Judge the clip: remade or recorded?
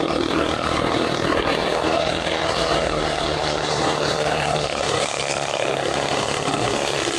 remade